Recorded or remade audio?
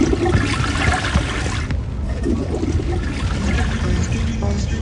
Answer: recorded